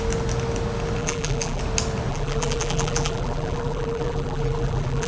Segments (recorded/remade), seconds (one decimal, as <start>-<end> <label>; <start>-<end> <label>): 0.0-1.0 recorded; 1.0-1.6 remade; 1.6-2.1 recorded; 2.1-5.1 remade